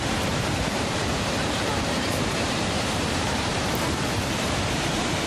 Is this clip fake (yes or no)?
yes